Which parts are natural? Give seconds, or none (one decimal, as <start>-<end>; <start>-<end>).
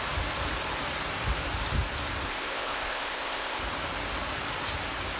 0.0-2.3; 3.6-5.2